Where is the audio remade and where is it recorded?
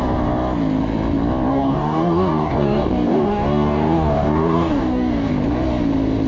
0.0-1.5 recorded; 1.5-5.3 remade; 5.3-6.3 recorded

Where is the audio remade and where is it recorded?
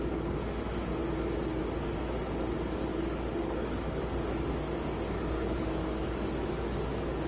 0.0-2.9 recorded; 2.9-7.3 remade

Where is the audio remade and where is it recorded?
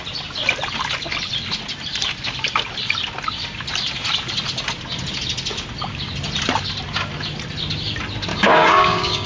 0.0-8.3 recorded; 8.3-9.3 remade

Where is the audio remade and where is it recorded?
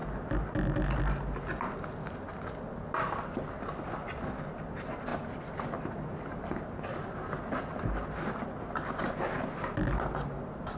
0.0-10.8 recorded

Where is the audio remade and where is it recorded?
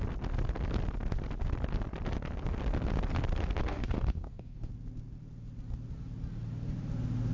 0.0-3.6 recorded; 3.6-4.7 remade; 4.7-7.3 recorded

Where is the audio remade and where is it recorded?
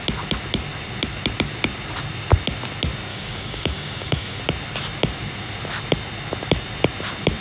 0.0-3.1 recorded; 3.1-4.4 remade; 4.4-7.4 recorded